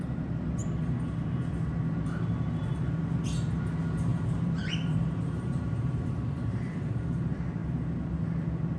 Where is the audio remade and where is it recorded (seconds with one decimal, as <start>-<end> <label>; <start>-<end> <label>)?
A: 0.0-4.1 recorded; 4.1-7.0 remade; 7.0-8.8 recorded